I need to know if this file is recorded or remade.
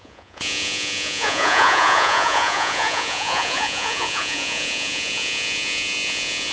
remade